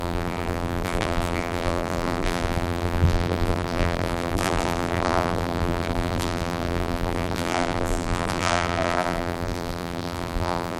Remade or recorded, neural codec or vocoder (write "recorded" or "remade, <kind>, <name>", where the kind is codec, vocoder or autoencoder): remade, vocoder, BigVGAN v2